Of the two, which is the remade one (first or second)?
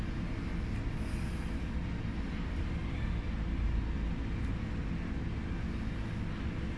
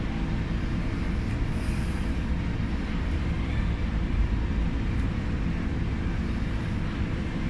second